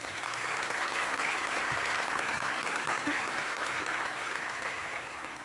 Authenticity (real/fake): fake